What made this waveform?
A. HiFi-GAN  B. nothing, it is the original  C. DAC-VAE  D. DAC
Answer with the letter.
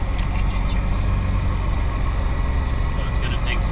B